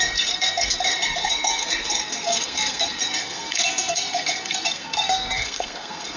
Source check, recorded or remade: remade